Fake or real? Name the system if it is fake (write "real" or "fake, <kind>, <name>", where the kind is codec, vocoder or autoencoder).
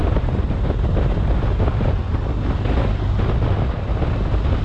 real